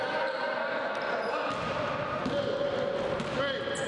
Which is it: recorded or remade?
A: recorded